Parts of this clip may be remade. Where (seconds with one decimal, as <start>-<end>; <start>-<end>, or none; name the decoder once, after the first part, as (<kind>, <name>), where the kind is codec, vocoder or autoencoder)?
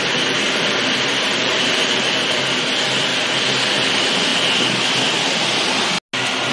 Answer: 0.0-3.1 (vocoder, BigVGAN v2); 3.9-4.3